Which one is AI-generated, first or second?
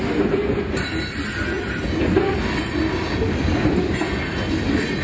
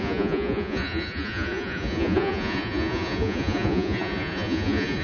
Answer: second